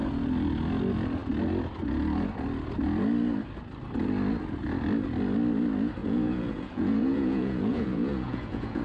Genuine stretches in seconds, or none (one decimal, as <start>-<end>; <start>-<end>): 0.0-6.0